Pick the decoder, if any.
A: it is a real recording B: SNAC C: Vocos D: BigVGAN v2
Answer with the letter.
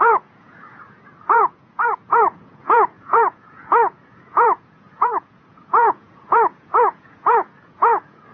C